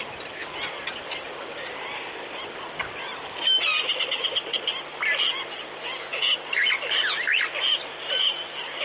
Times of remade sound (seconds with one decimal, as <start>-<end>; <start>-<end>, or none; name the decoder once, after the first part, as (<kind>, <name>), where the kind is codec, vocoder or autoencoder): none